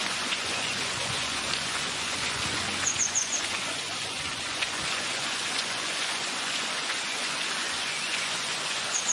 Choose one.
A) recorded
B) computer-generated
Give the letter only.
B